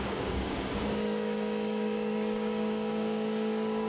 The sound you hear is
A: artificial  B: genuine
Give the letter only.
A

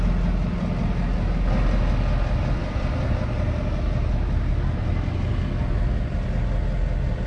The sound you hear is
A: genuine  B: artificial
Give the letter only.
A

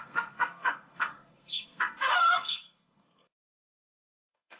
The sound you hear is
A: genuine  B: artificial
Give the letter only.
B